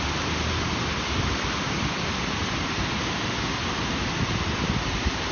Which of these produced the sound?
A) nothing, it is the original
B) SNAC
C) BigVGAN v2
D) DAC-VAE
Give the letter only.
A